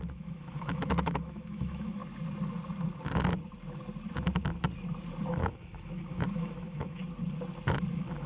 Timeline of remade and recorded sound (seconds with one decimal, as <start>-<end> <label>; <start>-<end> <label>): 0.0-2.0 remade; 2.0-5.3 recorded; 5.3-7.0 remade; 7.0-7.9 recorded; 7.9-8.3 remade